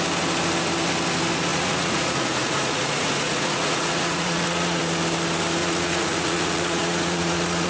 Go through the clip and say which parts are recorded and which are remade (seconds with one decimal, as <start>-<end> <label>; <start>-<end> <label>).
0.0-1.5 recorded; 1.5-4.8 remade; 4.8-5.6 recorded; 5.6-7.7 remade